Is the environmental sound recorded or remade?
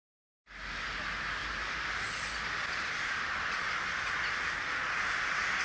recorded